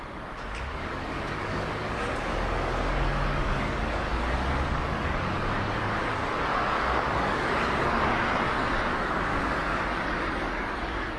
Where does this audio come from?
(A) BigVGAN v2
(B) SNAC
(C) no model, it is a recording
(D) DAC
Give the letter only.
D